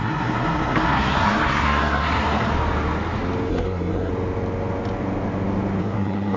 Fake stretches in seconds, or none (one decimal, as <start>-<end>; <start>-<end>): 0.0-2.5; 3.5-4.1; 5.8-6.4